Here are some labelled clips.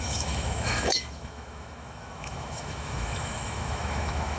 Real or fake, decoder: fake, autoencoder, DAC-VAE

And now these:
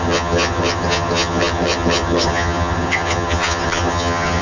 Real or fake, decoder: fake, vocoder, HiFi-GAN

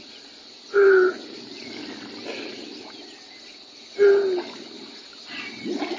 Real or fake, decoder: real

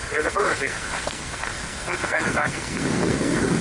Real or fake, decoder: fake, codec, SNAC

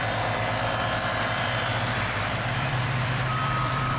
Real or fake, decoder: fake, vocoder, BigVGAN v2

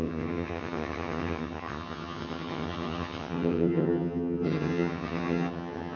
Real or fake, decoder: fake, vocoder, HiFi-GAN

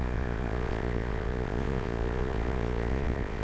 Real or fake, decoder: fake, vocoder, Vocos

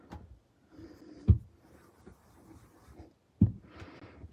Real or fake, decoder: real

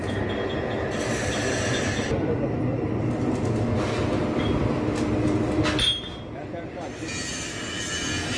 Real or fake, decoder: real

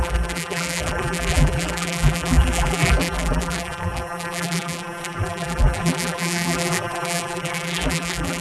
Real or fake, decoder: fake, vocoder, BigVGAN v2